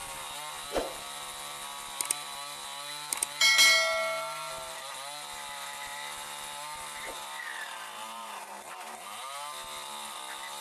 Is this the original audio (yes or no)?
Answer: yes